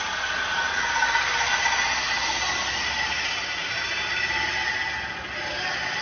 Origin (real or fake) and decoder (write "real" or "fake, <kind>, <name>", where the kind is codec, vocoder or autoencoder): real